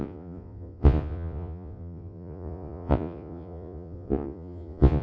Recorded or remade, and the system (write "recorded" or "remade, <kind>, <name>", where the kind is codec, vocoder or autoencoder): remade, vocoder, Vocos